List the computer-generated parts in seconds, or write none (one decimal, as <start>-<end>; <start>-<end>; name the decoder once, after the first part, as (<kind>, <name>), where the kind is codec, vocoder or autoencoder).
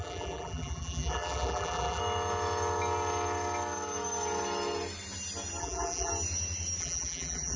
0.0-2.0 (vocoder, BigVGAN v2); 5.6-6.1; 6.8-7.6